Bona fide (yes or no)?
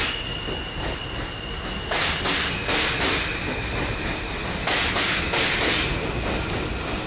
yes